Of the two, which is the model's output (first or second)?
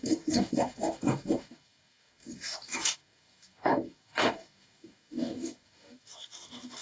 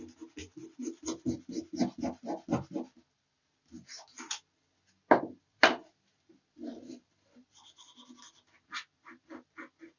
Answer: first